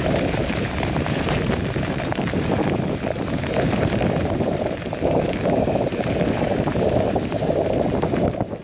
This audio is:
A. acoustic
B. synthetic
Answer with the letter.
B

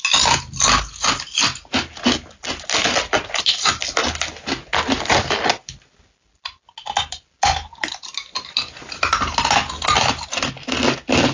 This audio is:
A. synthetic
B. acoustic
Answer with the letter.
B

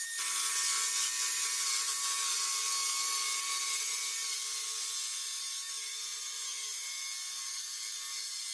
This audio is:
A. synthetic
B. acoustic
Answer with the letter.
B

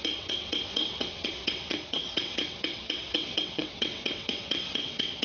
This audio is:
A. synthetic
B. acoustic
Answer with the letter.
A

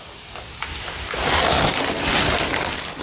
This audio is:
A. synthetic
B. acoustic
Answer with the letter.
B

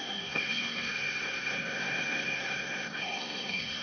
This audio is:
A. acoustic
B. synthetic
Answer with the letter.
B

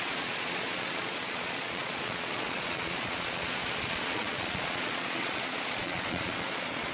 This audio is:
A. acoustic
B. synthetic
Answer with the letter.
B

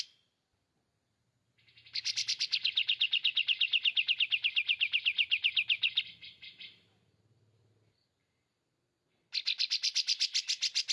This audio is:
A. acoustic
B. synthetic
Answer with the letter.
A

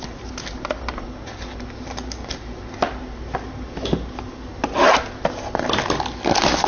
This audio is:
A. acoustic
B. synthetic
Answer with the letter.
A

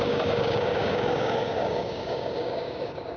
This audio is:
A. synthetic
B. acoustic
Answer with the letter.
A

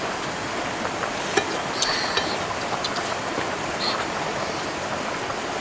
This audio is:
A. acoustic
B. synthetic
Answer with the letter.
B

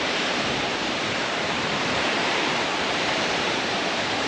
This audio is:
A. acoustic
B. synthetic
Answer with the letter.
B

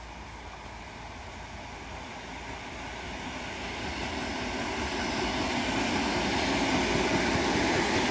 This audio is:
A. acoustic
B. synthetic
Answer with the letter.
A